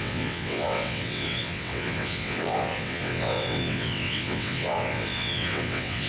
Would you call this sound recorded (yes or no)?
no